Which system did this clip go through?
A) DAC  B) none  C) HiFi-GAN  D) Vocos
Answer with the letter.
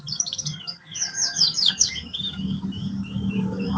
A